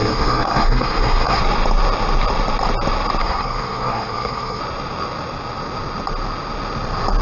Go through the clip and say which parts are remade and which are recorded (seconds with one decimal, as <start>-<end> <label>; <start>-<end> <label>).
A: 0.0-1.4 remade; 1.4-3.2 recorded; 3.2-4.6 remade; 4.6-7.2 recorded